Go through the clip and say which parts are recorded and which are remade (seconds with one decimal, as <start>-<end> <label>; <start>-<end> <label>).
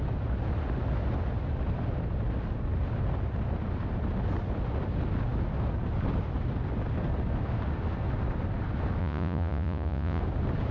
0.0-9.0 recorded; 9.0-10.2 remade; 10.2-10.7 recorded